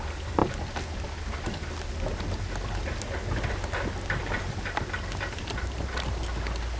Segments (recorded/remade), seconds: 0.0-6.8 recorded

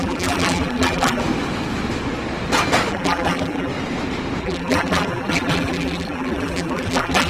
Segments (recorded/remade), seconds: 0.0-1.2 remade; 1.2-2.9 recorded; 2.9-3.7 remade; 3.7-4.4 recorded; 4.4-7.3 remade